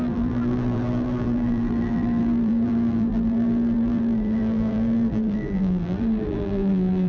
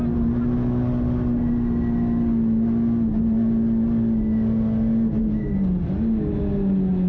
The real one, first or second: second